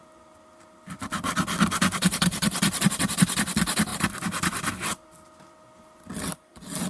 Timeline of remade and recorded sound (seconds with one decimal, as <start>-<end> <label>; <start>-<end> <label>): 0.0-6.9 recorded

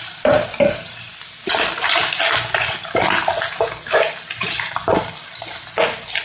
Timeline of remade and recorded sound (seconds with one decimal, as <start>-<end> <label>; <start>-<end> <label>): 0.0-6.2 recorded

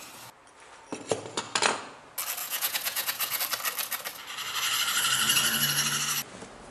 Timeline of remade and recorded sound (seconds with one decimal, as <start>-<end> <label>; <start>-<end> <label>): 0.0-2.4 recorded; 2.4-3.4 remade; 3.4-6.7 recorded

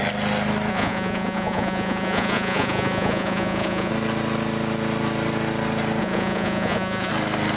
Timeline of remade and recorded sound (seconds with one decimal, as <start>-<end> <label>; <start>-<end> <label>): 0.0-0.7 recorded; 0.7-3.9 remade; 3.9-6.0 recorded; 6.0-7.1 remade; 7.1-7.6 recorded

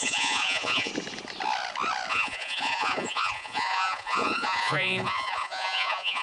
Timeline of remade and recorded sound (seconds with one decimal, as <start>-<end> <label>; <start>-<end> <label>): 0.0-0.9 remade; 0.9-2.1 recorded; 2.1-6.2 remade